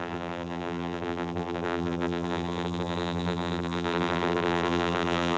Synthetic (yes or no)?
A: yes